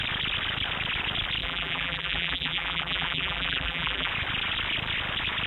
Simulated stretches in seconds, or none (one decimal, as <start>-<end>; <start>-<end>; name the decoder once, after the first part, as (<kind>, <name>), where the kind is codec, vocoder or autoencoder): 1.4-4.1 (vocoder, BigVGAN v2)